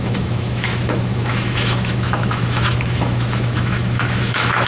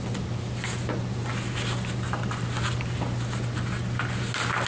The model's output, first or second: first